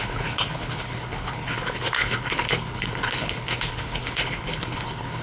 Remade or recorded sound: remade